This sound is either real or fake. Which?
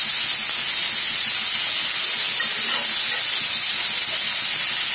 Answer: real